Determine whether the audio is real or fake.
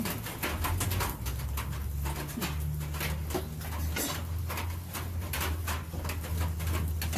real